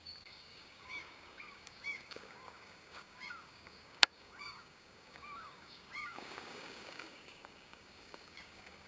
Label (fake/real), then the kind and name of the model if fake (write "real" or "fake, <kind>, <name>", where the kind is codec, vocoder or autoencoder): fake, codec, DAC